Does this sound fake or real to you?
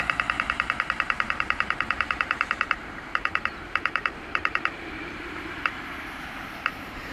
fake